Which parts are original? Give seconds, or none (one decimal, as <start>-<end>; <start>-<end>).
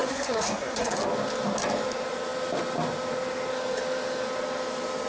1.0-5.1